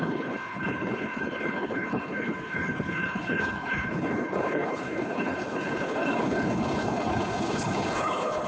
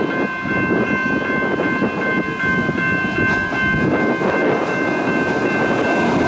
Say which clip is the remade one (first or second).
first